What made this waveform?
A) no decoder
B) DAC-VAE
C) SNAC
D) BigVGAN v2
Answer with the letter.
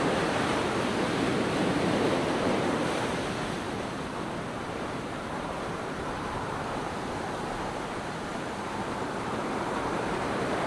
D